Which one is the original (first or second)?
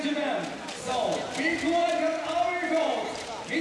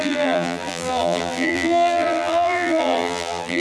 first